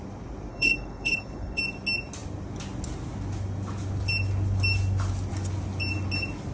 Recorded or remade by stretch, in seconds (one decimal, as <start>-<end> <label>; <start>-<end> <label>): 0.0-0.5 recorded; 0.5-1.6 remade; 1.6-6.5 recorded